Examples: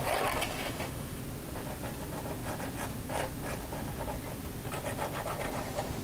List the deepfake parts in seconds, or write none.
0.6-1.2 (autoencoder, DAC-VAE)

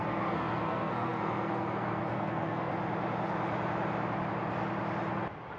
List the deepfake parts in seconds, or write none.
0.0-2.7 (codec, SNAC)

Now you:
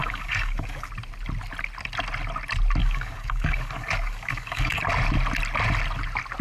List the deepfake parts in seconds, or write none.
0.0-0.9 (codec, DAC); 2.8-4.8

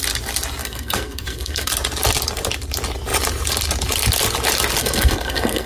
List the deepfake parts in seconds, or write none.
0.6-1.7 (codec, SNAC); 4.8-5.7

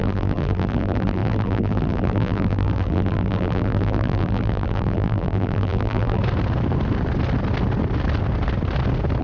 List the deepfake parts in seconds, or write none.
0.0-6.2 (vocoder, BigVGAN v2)

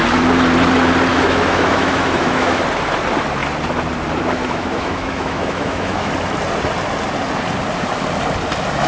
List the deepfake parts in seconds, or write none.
1.1-2.6 (autoencoder, DAC-VAE); 4.4-6.1

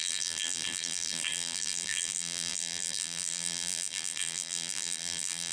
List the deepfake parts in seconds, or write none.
0.0-5.5 (vocoder, BigVGAN v2)